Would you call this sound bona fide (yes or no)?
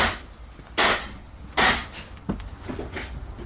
yes